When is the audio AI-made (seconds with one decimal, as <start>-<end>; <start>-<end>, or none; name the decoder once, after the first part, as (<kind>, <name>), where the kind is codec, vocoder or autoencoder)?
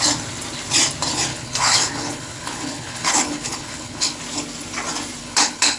1.3-4.2 (codec, HILCodec); 5.2-5.8